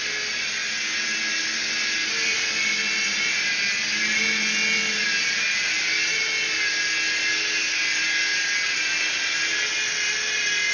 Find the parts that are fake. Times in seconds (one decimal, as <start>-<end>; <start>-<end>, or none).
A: none